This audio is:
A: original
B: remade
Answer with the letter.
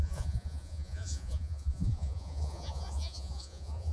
B